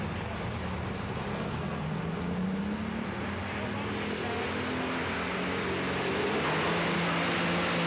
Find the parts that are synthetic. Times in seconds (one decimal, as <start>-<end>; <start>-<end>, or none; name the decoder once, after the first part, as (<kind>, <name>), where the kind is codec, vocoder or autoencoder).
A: 1.3-1.8 (codec, SNAC)